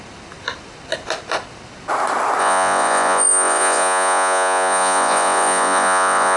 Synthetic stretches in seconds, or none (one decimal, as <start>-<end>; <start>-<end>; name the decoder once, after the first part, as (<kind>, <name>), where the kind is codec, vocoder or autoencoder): 2.4-6.4 (vocoder, Vocos)